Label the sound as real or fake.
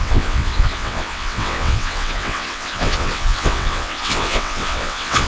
fake